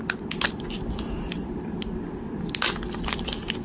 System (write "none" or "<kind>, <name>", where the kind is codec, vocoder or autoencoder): none